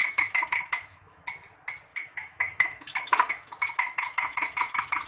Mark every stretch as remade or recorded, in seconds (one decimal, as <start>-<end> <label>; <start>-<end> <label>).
0.0-1.2 remade; 1.2-1.9 recorded; 1.9-5.1 remade